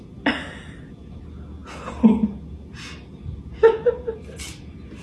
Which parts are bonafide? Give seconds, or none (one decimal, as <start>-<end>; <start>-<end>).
0.0-5.0